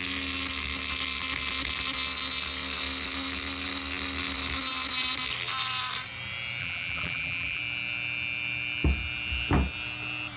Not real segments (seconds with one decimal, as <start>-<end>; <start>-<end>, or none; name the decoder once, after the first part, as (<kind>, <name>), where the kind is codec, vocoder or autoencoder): 6.6-7.6 (vocoder, BigVGAN v2)